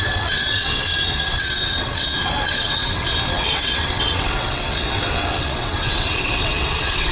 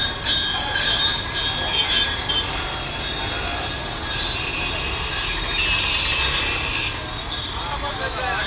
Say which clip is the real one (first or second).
second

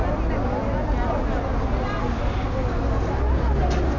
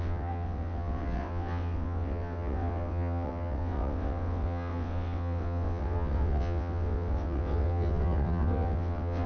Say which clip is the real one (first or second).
first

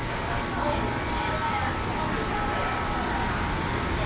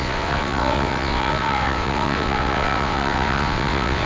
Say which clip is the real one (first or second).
first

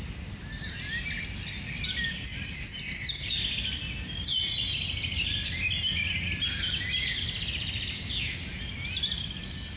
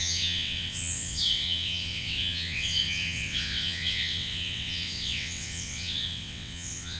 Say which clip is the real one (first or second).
first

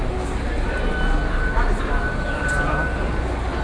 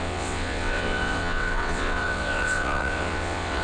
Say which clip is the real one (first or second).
first